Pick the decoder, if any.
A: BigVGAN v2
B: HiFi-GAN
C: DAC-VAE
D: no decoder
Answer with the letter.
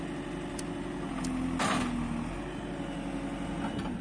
D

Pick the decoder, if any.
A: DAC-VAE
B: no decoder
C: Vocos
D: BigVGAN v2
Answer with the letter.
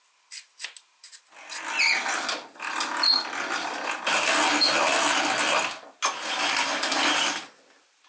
B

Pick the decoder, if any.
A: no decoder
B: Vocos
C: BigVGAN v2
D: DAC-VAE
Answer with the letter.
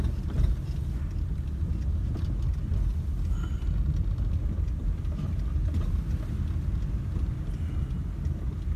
A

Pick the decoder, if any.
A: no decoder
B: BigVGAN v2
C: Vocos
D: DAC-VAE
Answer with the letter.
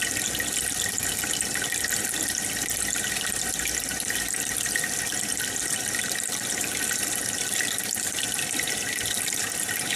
A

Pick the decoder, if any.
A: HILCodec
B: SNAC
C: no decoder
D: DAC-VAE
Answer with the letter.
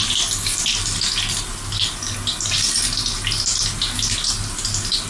C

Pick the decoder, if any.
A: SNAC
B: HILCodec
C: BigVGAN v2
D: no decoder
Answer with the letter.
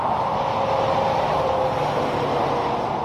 D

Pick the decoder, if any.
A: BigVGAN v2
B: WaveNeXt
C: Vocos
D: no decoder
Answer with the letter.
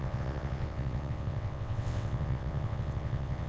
B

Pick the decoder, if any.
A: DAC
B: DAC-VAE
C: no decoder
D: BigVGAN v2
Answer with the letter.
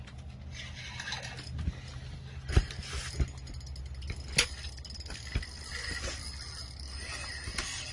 C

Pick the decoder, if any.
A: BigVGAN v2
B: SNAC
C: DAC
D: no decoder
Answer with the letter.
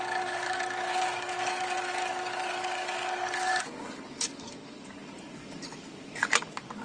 C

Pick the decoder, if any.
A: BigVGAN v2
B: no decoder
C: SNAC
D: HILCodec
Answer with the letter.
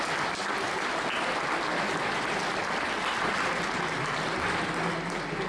B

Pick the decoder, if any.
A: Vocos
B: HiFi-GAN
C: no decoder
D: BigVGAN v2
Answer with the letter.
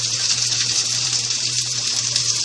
D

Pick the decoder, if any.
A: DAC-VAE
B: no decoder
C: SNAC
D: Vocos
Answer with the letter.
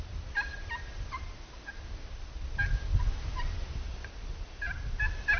B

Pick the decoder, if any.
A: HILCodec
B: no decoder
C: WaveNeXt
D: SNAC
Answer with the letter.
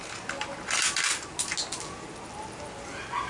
B